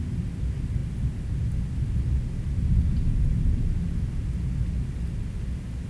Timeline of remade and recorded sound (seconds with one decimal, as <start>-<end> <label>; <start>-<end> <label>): 0.0-5.9 recorded